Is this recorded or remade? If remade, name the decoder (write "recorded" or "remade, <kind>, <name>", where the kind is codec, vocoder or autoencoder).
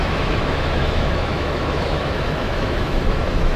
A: remade, autoencoder, DAC-VAE